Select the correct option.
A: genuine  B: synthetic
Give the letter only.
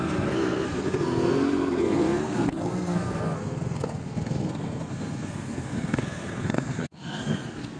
B